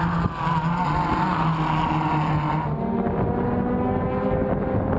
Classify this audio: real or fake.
real